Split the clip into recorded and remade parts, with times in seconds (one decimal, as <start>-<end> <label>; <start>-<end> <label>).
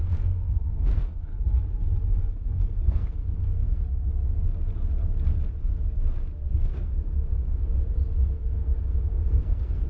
0.0-1.3 remade; 1.3-2.3 recorded; 2.3-3.8 remade; 3.8-6.5 recorded; 6.5-7.7 remade; 7.7-8.2 recorded; 8.2-9.9 remade